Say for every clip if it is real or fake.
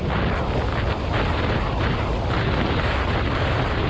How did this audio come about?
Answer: real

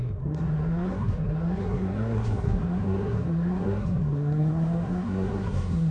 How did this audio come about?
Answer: fake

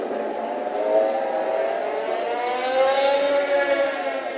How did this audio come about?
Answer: real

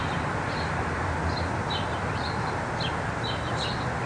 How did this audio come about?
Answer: real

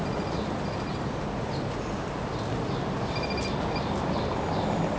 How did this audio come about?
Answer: real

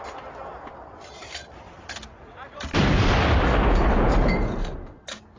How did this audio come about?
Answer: real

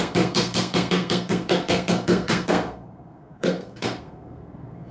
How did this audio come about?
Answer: fake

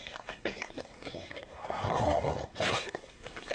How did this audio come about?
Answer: fake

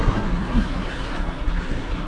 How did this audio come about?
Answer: fake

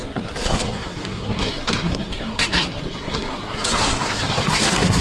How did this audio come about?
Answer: fake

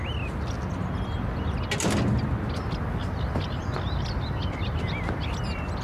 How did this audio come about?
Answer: real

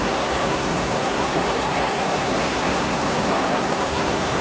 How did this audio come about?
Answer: fake